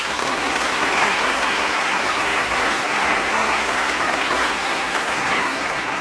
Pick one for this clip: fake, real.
fake